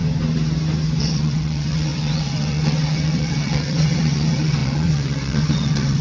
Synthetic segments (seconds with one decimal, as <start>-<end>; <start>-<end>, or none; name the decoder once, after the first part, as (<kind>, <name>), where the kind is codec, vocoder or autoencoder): 1.0-6.0 (vocoder, WaveNeXt)